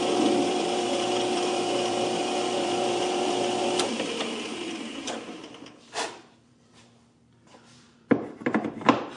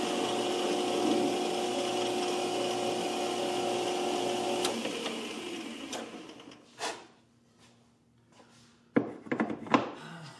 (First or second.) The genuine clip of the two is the second